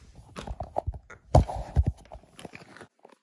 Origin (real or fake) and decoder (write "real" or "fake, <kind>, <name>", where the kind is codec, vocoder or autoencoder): real